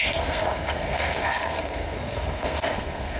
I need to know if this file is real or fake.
fake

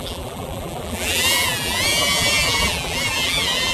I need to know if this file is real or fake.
fake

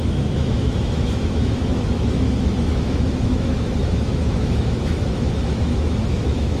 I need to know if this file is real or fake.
fake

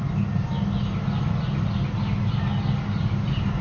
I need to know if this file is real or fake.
real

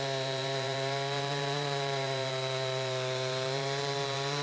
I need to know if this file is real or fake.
fake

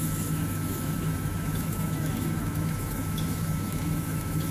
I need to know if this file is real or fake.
fake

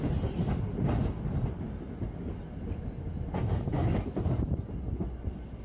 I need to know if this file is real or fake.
real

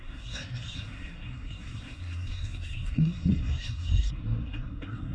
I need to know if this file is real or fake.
fake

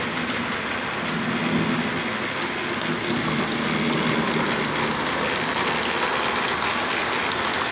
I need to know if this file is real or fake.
real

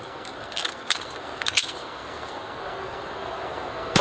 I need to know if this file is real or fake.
fake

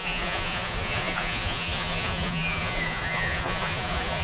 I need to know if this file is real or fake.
fake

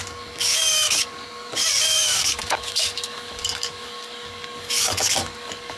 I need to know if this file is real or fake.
fake